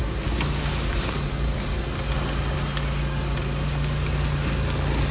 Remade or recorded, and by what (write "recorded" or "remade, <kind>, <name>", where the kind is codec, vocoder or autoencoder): recorded